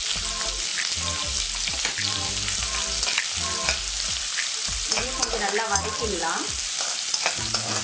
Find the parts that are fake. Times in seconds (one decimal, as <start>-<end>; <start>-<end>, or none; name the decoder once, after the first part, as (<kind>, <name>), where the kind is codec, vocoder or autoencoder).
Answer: none